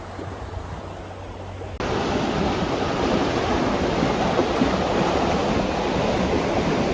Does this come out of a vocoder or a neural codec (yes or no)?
no